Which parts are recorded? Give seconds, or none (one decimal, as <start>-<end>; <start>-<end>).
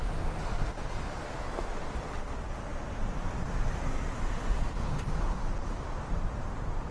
0.0-6.9